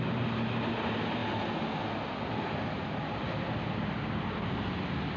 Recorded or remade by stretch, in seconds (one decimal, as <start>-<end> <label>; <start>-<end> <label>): 0.0-5.2 recorded